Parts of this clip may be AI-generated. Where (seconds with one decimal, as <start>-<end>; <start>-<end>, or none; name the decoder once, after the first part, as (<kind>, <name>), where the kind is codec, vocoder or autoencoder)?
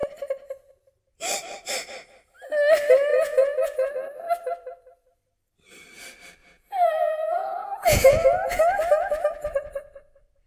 3.1-3.9 (vocoder, Vocos); 6.4-8.6